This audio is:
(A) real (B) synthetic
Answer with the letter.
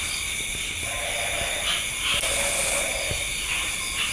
A